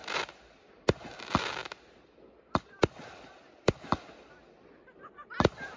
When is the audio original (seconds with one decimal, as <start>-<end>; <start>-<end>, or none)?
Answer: 0.0-5.8